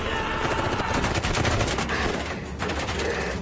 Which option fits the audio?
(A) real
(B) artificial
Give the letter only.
A